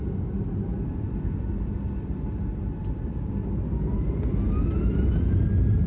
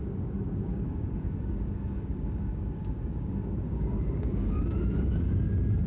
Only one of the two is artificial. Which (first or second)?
second